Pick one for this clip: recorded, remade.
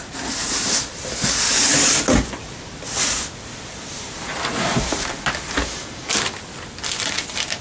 recorded